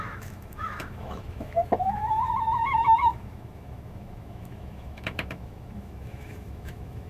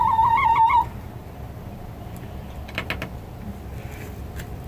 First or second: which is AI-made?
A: first